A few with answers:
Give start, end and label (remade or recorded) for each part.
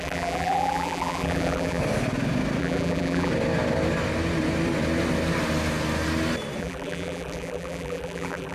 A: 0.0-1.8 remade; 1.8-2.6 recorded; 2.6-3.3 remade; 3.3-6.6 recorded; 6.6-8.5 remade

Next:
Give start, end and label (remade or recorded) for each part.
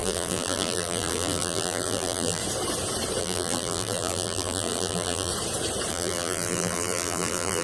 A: 0.0-2.4 remade; 2.4-3.2 recorded; 3.2-5.3 remade; 5.3-5.9 recorded; 5.9-7.6 remade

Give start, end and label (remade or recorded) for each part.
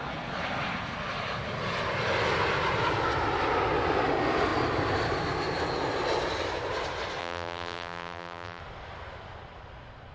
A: 0.0-7.2 recorded; 7.2-8.6 remade; 8.6-10.1 recorded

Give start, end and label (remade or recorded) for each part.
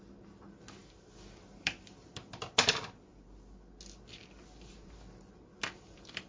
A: 0.0-6.3 recorded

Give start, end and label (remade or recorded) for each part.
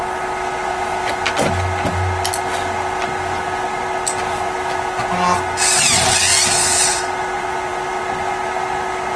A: 0.0-6.3 recorded; 6.3-8.0 remade; 8.0-9.2 recorded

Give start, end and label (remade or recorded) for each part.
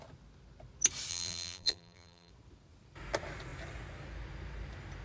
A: 0.0-1.1 recorded; 1.1-2.3 remade; 2.3-5.0 recorded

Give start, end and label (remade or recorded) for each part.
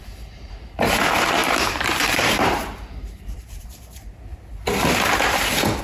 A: 0.0-4.3 remade; 4.3-5.8 recorded